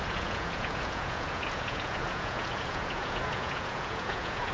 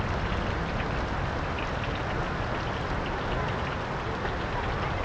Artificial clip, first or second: first